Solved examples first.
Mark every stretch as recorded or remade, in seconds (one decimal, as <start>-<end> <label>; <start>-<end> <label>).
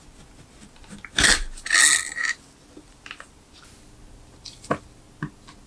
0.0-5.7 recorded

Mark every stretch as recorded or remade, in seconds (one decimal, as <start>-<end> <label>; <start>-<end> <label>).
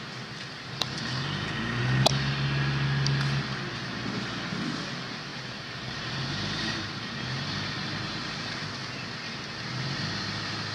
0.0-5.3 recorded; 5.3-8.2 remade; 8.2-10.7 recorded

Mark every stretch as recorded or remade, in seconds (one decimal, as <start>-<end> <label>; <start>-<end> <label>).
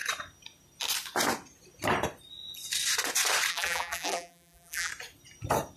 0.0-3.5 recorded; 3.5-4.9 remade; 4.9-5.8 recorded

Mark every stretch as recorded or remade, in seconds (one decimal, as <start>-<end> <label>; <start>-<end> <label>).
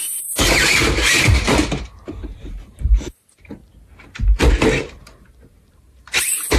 0.0-3.6 remade; 3.6-5.7 recorded; 5.7-6.6 remade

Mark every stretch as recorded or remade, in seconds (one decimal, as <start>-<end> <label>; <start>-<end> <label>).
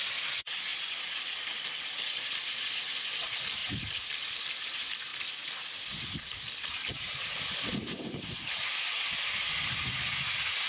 0.0-6.9 recorded; 6.9-8.8 remade; 8.8-10.7 recorded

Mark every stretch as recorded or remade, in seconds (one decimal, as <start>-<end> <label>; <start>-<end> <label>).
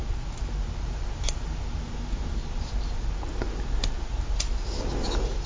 0.0-5.5 recorded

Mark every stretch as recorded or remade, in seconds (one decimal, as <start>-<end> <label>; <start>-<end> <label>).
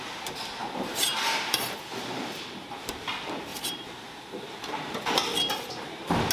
0.0-0.6 recorded; 0.6-2.9 remade; 2.9-3.5 recorded; 3.5-5.2 remade; 5.2-6.3 recorded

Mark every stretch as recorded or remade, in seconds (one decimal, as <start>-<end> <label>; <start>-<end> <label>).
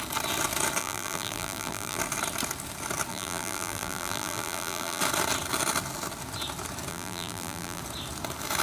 0.0-0.8 recorded; 0.8-2.0 remade; 2.0-3.1 recorded; 3.1-5.0 remade; 5.0-6.9 recorded; 6.9-7.8 remade; 7.8-8.6 recorded